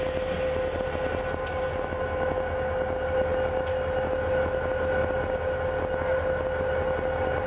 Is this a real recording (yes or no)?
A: yes